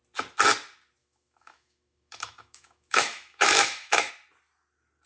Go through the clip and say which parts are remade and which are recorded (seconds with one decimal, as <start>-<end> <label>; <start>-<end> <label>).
0.0-1.0 recorded; 1.0-4.1 remade; 4.1-5.1 recorded